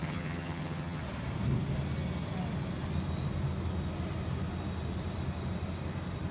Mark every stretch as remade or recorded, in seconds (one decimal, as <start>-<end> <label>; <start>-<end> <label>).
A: 0.0-1.0 remade; 1.0-6.3 recorded